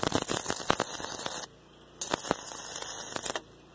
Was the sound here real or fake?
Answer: real